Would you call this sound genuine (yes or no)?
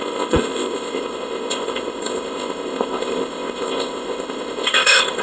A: no